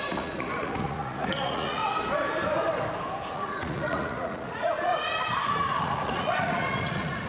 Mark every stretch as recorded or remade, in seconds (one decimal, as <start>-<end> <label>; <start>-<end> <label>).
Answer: 0.0-1.8 remade; 1.8-3.3 recorded; 3.3-4.9 remade; 4.9-5.8 recorded; 5.8-7.3 remade